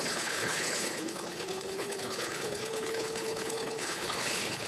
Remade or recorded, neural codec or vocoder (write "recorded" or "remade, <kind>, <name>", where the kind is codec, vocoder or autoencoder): remade, codec, HILCodec